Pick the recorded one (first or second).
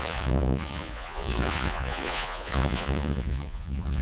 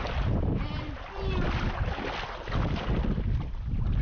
second